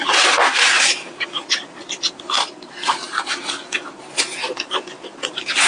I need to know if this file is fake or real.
real